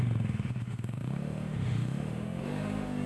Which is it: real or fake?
fake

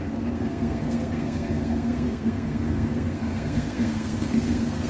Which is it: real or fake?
fake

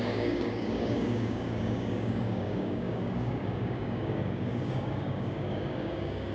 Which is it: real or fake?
fake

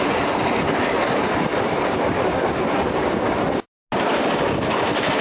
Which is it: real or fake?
real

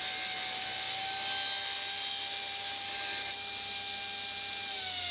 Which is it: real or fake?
real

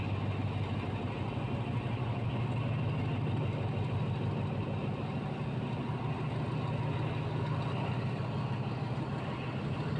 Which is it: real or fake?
real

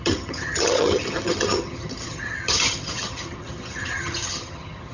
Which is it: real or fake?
fake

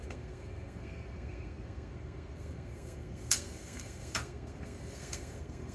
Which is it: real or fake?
fake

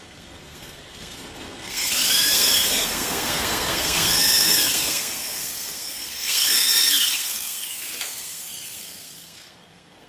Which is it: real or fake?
fake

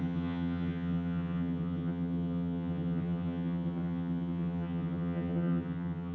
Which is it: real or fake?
fake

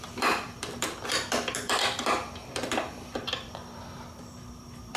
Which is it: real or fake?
fake